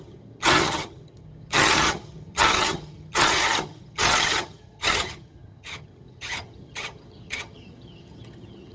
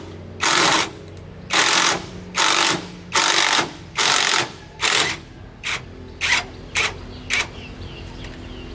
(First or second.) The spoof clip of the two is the first